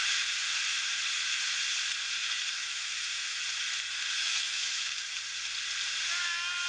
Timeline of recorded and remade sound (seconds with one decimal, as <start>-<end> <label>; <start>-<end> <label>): 0.0-2.2 recorded; 2.2-3.4 remade; 3.4-4.2 recorded; 4.2-5.2 remade; 5.2-6.7 recorded